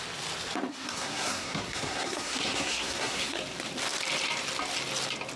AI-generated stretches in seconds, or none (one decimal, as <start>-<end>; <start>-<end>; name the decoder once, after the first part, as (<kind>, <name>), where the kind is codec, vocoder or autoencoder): 0.7-3.4 (codec, SNAC)